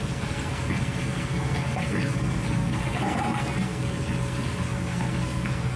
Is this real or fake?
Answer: fake